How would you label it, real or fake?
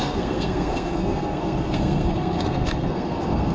fake